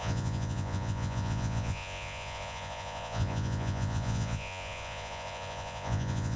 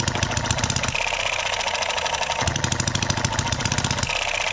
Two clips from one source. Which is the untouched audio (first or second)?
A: second